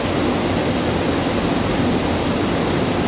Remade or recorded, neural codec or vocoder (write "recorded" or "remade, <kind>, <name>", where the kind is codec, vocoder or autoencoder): recorded